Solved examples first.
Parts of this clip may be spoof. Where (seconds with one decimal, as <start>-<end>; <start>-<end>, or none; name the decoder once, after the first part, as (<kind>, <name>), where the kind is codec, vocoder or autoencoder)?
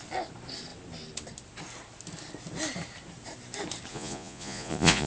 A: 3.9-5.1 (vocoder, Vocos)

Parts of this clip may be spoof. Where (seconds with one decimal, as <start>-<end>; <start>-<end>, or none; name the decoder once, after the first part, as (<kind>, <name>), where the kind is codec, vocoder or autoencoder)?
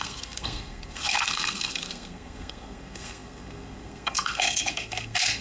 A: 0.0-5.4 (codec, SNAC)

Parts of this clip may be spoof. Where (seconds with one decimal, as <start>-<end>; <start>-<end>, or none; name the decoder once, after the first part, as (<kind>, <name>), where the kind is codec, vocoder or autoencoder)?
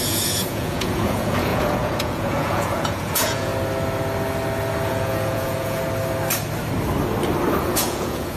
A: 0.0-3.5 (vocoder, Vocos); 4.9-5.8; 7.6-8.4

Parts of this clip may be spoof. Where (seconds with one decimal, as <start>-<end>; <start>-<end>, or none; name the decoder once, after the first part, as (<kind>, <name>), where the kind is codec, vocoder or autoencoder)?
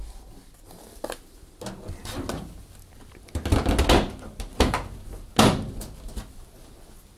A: none